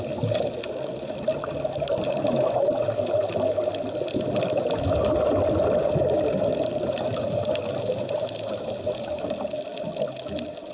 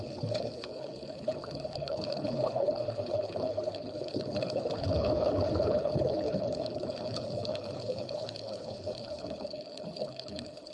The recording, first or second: first